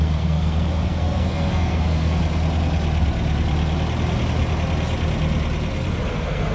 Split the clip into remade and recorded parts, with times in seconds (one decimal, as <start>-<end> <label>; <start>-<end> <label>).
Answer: 0.0-2.2 remade; 2.2-6.1 recorded; 6.1-6.5 remade